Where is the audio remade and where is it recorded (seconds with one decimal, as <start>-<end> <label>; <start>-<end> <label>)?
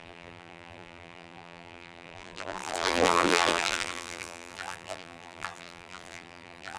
0.0-6.8 remade